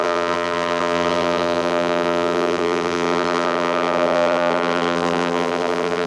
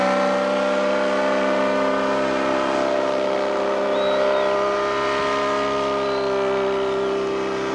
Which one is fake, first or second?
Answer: first